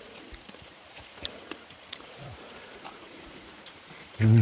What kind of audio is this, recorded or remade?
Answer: remade